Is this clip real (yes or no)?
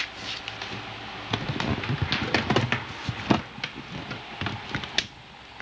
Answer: yes